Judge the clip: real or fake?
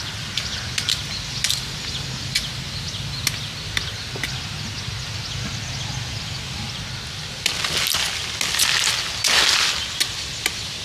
real